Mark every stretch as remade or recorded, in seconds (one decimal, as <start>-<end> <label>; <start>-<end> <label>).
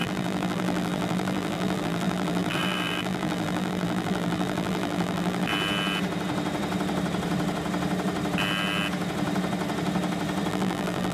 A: 0.0-5.5 remade; 5.5-10.5 recorded; 10.5-11.1 remade